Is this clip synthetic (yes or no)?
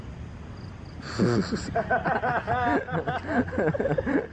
no